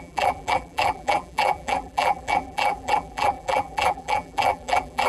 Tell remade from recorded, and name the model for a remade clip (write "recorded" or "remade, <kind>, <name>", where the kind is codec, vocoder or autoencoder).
remade, vocoder, BigVGAN v2